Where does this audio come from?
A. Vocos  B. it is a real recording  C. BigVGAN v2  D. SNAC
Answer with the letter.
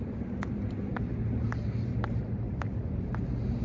C